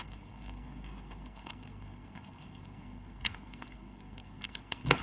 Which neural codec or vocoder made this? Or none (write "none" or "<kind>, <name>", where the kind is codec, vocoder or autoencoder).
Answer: codec, SNAC